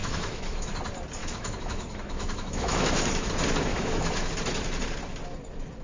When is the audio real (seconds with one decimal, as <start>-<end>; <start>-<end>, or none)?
0.7-1.2; 3.3-3.7; 4.3-5.8